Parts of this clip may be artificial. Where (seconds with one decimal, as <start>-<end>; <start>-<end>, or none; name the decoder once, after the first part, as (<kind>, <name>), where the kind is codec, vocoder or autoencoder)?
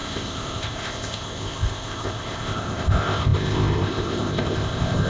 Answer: 0.0-5.1 (codec, ZipCodec)